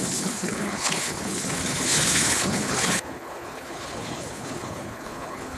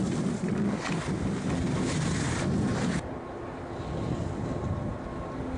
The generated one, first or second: first